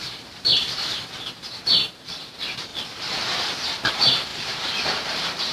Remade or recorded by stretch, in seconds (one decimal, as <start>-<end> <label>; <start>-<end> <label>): 0.0-1.0 remade; 1.0-2.0 recorded; 2.0-2.7 remade; 2.7-3.9 recorded; 3.9-5.5 remade